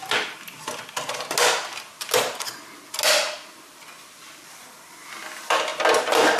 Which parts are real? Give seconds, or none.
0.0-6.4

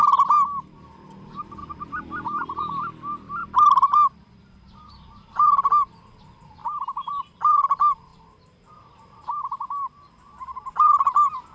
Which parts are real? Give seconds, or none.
0.0-3.4; 5.7-6.6; 7.2-8.1; 10.5-11.5

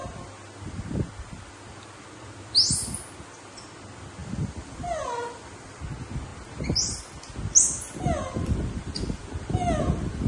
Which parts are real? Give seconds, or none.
0.0-4.2; 5.8-10.3

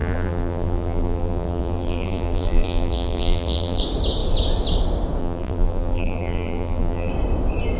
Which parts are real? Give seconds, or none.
3.8-5.2; 7.1-7.8

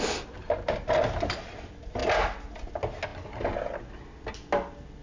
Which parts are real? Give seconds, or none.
0.0-5.0

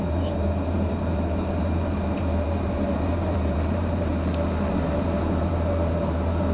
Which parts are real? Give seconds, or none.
4.1-4.7

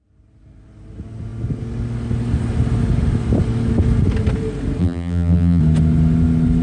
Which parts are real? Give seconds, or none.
0.0-4.8; 5.6-6.6